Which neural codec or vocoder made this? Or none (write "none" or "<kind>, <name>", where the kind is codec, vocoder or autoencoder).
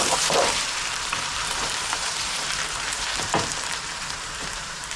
vocoder, BigVGAN v2